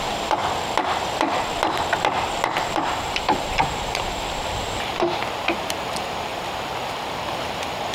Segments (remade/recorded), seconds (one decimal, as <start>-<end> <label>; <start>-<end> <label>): 0.0-0.4 remade; 0.4-2.7 recorded; 2.7-5.2 remade; 5.2-5.8 recorded; 5.8-6.3 remade; 6.3-6.9 recorded; 6.9-7.9 remade